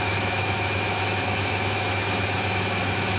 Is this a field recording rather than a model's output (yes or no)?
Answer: no